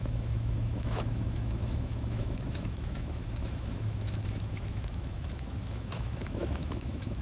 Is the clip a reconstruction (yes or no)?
yes